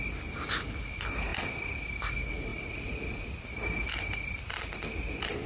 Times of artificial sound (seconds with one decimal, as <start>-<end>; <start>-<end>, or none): 2.5-3.3